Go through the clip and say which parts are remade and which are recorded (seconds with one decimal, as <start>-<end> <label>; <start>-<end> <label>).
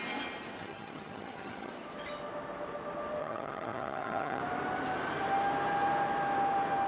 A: 0.0-0.6 recorded; 0.6-1.7 remade; 1.7-3.2 recorded; 3.2-4.4 remade; 4.4-6.9 recorded